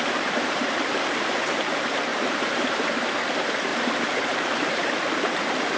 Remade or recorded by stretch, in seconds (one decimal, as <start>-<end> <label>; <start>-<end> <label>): 0.0-5.8 remade